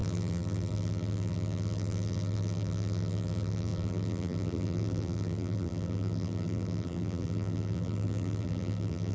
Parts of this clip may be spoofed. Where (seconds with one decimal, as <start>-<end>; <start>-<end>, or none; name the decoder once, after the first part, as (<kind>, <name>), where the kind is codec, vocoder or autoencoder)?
0.0-9.1 (vocoder, BigVGAN v2)